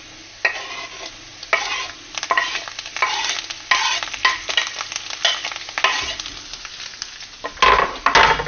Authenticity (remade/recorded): recorded